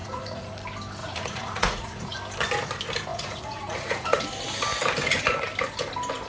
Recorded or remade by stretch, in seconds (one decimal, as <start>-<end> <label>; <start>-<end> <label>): 0.0-0.5 remade; 0.5-1.0 recorded; 1.0-2.2 remade; 2.2-3.1 recorded; 3.1-4.2 remade; 4.2-6.3 recorded